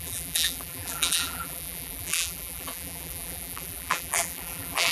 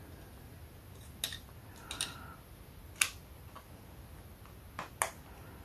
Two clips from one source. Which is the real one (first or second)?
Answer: second